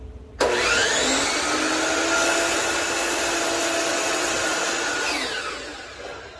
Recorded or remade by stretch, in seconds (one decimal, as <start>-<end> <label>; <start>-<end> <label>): 0.0-3.9 recorded; 3.9-4.5 remade; 4.5-6.4 recorded